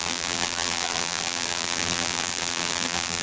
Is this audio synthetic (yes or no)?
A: yes